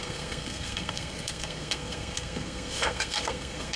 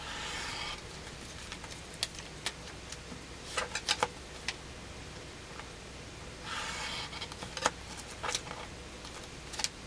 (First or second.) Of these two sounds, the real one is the second